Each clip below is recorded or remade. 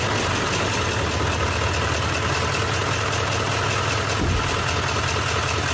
recorded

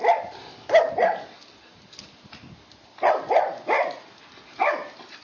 recorded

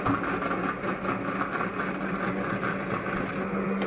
recorded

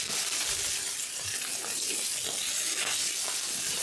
recorded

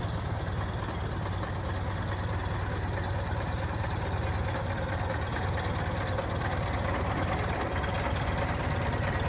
recorded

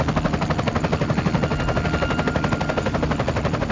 recorded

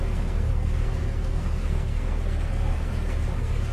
remade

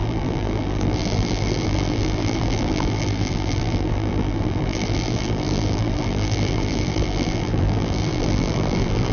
remade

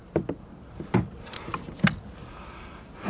recorded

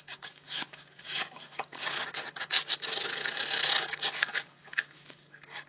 remade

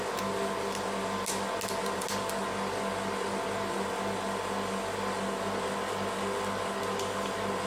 recorded